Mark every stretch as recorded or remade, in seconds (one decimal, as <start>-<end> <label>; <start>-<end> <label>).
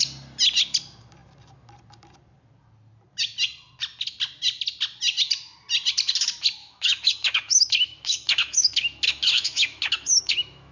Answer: 0.0-6.6 recorded; 6.6-10.7 remade